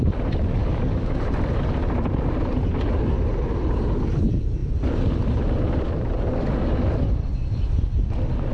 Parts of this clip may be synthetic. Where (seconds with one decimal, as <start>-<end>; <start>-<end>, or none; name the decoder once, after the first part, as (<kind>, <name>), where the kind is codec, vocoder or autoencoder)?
0.6-1.2 (codec, DAC)